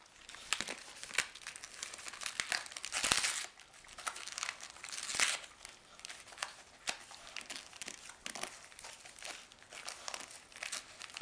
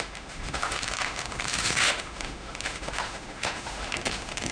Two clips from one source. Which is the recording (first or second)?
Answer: first